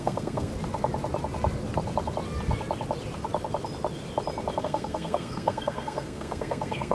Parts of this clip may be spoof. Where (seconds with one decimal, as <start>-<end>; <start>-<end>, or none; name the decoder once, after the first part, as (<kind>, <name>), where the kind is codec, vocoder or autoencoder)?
0.0-0.5 (codec, SNAC); 4.6-6.9